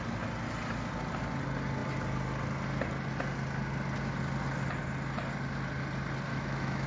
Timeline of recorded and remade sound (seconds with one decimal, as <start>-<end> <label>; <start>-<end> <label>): 0.0-6.3 recorded; 6.3-6.9 remade